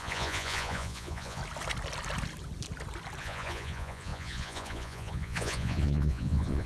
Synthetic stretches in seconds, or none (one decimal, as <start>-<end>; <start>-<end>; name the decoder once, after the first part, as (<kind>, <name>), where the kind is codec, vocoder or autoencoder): 0.0-1.4 (vocoder, Vocos); 3.2-6.7